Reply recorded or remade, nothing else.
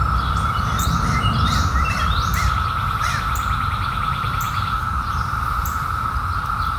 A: remade